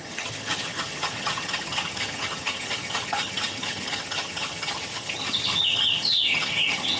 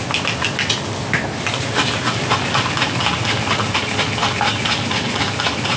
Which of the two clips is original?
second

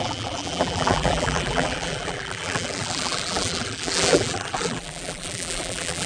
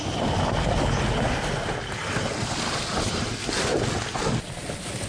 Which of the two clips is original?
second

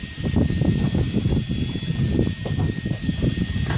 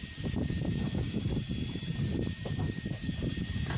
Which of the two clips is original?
first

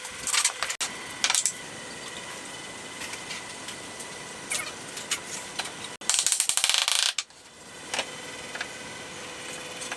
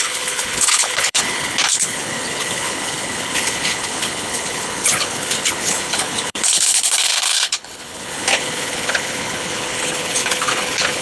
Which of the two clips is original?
first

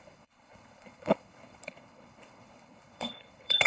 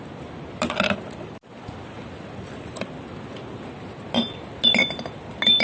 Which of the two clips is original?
second